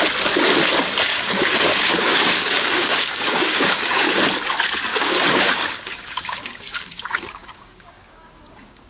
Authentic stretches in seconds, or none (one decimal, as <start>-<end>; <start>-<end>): 0.0-1.1; 4.2-4.9